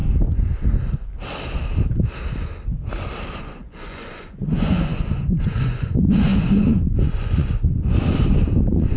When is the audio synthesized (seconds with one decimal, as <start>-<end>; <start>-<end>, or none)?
3.4-9.0